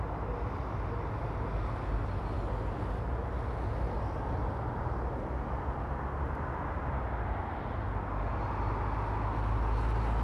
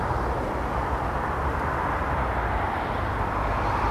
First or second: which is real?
first